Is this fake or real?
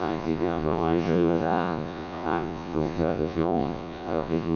fake